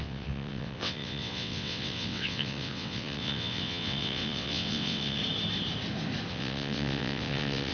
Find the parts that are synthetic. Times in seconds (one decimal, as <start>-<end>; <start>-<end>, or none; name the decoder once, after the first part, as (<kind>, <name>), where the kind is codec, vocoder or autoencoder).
0.0-5.2 (vocoder, WaveNeXt); 6.3-7.7